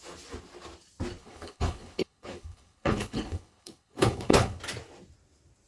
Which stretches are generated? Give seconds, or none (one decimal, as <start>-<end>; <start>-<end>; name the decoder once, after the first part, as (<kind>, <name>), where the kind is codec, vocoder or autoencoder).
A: 1.2-4.6 (codec, HILCodec)

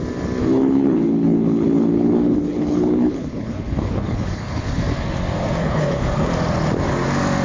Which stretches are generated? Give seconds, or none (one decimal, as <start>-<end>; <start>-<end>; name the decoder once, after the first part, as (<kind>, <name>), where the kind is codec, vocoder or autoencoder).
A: 0.4-4.8 (codec, HILCodec); 5.6-6.3

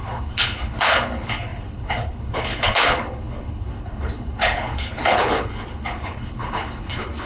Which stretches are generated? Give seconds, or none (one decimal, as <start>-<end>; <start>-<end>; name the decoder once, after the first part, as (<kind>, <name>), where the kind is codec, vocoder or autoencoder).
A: 0.0-7.3 (codec, HILCodec)

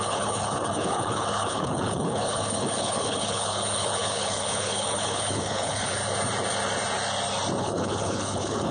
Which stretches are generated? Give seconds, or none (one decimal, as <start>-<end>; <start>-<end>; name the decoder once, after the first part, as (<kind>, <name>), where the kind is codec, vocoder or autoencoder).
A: 0.0-6.0 (codec, HILCodec); 7.6-8.7

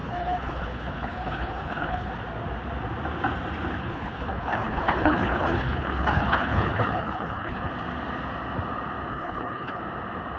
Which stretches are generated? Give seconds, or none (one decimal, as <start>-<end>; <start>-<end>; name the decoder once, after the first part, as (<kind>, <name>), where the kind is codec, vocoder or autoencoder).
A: 0.0-2.1 (codec, HILCodec); 3.8-7.7; 9.1-9.8

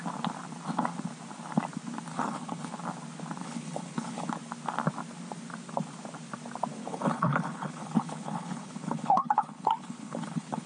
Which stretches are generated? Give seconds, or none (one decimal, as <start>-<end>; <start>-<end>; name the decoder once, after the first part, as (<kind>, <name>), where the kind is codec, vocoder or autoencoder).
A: 2.1-2.7 (codec, HILCodec); 3.4-4.3; 6.8-10.7